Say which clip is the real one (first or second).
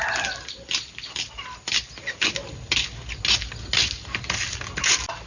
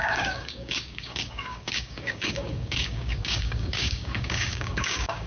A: first